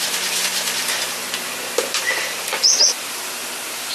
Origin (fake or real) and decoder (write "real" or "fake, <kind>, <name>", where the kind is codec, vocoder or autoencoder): fake, vocoder, BigVGAN v2